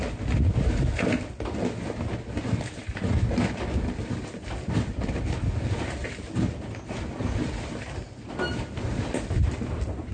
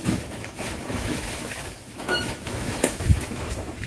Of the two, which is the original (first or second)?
first